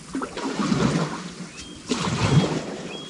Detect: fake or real real